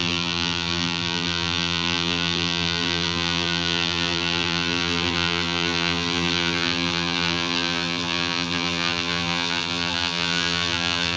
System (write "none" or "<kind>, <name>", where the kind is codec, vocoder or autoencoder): vocoder, BigVGAN v2